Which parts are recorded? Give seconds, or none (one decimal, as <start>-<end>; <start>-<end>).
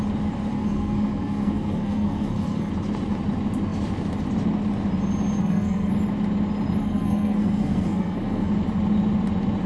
0.0-0.5; 2.7-5.4; 5.9-6.8; 8.5-9.7